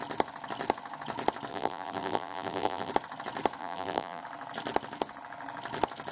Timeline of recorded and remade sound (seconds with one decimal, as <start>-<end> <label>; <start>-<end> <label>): 0.0-1.5 recorded; 1.5-2.9 remade; 2.9-3.6 recorded; 3.6-4.2 remade; 4.2-6.1 recorded